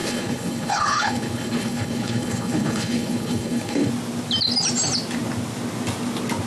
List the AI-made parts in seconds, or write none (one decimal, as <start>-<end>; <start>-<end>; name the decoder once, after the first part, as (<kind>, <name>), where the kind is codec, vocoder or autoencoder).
0.0-3.9 (codec, HILCodec)